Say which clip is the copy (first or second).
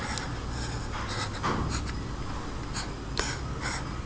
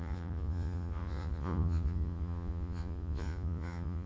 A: second